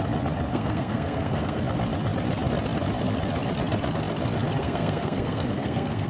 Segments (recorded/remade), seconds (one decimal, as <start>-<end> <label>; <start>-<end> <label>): 0.0-0.5 recorded; 0.5-1.6 remade; 1.6-4.6 recorded; 4.6-6.1 remade